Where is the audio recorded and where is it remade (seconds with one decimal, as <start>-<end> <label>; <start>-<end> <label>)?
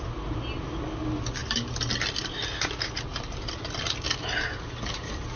0.0-5.4 recorded